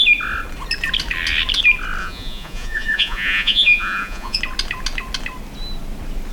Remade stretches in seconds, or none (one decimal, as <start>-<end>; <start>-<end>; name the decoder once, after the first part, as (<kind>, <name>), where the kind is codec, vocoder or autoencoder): 2.0-4.4 (vocoder, Vocos)